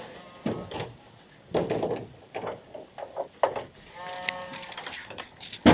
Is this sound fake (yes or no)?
no